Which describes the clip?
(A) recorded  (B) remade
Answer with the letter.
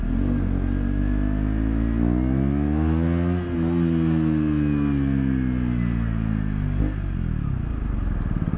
A